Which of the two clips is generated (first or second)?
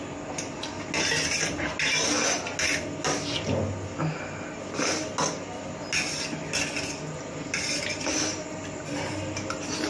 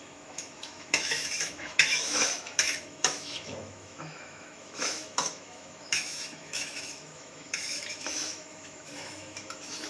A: second